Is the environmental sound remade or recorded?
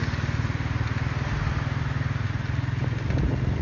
recorded